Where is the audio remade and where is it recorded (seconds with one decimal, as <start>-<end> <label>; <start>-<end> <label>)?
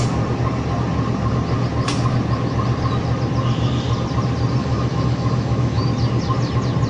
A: 0.0-4.6 recorded; 4.6-5.8 remade; 5.8-6.9 recorded